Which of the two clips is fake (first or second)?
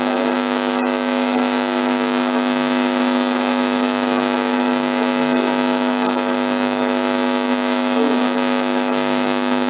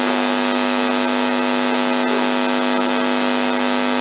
first